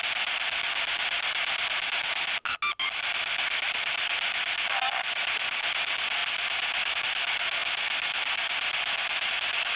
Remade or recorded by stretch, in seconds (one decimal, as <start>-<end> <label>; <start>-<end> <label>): 0.0-9.8 recorded